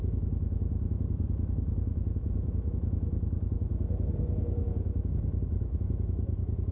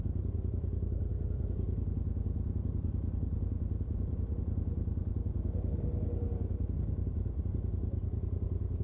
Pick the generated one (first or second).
first